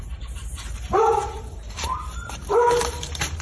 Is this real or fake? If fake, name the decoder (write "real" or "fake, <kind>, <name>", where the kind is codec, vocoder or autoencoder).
fake, vocoder, BigVGAN v2